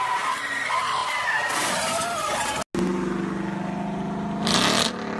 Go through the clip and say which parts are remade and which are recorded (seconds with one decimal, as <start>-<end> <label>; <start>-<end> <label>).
0.0-5.2 recorded